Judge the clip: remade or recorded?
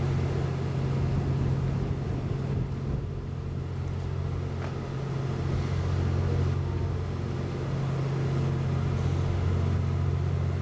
recorded